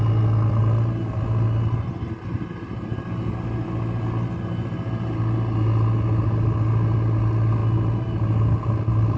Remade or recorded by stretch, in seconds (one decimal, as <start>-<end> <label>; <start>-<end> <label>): 0.0-9.2 recorded